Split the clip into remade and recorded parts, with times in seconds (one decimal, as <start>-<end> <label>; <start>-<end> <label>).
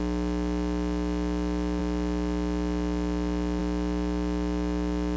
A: 0.0-5.2 recorded